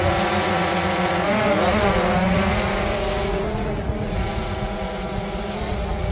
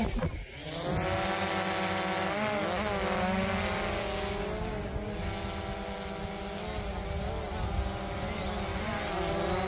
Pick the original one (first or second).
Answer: second